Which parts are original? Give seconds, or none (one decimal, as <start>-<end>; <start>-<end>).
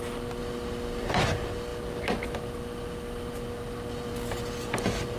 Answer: 0.0-5.2